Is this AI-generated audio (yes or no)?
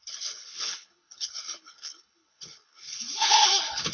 yes